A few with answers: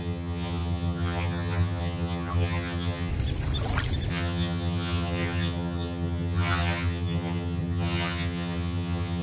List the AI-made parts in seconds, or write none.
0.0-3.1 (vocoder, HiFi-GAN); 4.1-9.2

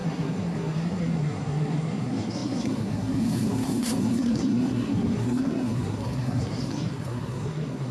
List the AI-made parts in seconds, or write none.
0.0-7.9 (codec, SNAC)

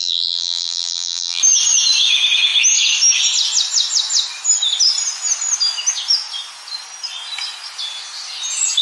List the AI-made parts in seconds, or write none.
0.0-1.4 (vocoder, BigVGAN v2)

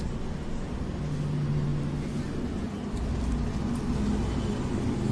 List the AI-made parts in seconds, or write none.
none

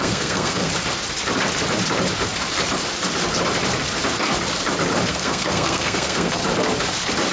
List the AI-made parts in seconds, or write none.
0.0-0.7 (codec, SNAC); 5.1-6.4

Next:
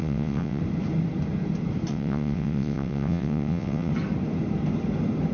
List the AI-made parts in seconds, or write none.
0.0-0.6 (vocoder, WaveNeXt); 1.9-3.9

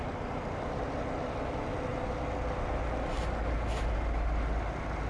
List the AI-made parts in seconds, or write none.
none